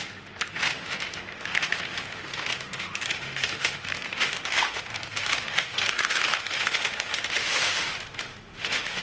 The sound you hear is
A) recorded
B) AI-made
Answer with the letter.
B